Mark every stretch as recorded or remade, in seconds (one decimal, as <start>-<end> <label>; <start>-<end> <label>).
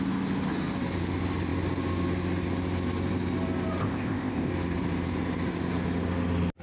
0.0-3.8 recorded; 3.8-4.5 remade; 4.5-6.6 recorded